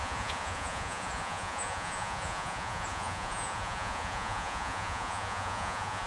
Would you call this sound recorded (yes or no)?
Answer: no